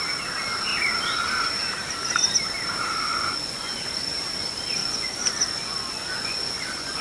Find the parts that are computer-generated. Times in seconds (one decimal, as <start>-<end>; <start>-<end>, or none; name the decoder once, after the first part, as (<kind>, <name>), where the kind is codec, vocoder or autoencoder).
3.1-4.1 (vocoder, Vocos); 4.8-7.0